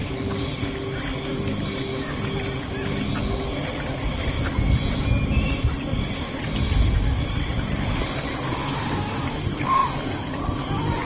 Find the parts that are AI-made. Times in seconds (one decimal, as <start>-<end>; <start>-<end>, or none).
none

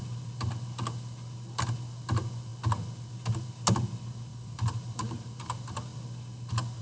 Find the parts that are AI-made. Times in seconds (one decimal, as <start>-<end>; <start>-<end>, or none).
4.3-5.4

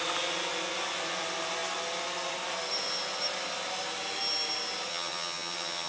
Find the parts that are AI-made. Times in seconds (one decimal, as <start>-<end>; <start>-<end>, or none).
4.9-5.9

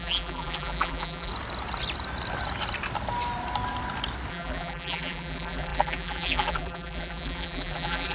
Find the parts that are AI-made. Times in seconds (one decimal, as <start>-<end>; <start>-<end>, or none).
0.0-1.3; 4.3-8.1

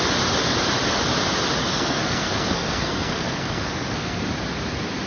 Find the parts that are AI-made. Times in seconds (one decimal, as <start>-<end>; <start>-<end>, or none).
1.6-4.2